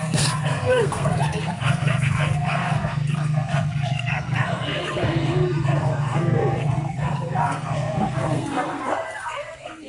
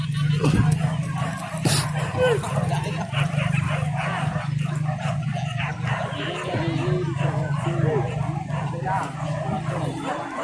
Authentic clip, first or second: second